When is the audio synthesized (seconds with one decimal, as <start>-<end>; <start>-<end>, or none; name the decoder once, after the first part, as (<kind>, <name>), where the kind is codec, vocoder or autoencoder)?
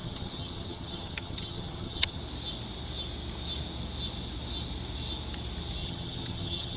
0.0-2.2 (vocoder, HiFi-GAN); 5.8-6.8